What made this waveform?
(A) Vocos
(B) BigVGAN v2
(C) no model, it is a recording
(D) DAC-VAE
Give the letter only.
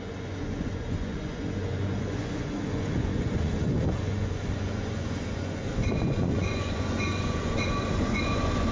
A